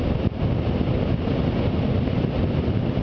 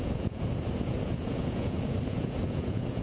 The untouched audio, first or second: first